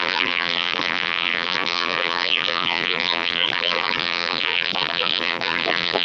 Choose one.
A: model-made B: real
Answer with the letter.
A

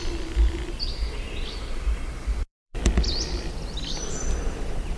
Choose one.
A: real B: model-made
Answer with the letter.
B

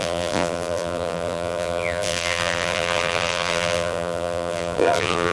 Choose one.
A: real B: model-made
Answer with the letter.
B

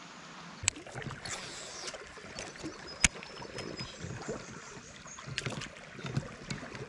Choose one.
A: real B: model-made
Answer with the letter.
A